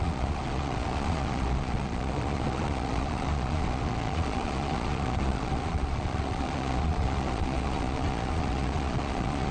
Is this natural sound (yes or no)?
no